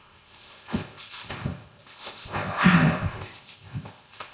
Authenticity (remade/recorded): remade